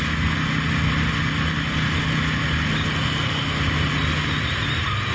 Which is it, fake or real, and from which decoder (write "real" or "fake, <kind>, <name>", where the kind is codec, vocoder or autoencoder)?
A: real